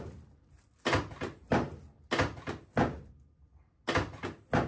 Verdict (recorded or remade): recorded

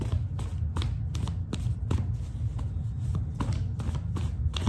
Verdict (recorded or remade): recorded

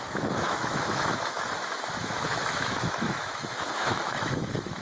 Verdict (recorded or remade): remade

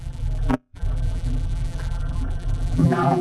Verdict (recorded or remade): remade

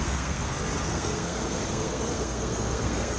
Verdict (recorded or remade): remade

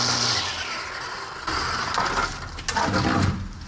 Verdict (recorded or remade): recorded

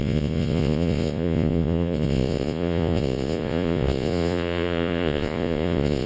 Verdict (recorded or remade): remade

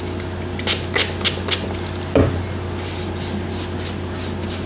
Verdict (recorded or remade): recorded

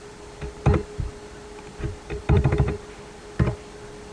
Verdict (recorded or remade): recorded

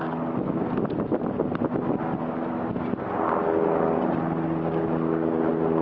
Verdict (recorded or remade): recorded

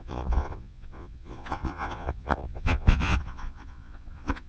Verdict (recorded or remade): remade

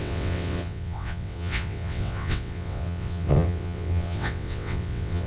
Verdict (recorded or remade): remade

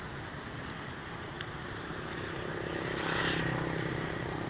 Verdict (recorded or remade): recorded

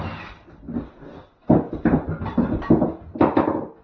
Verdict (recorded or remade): recorded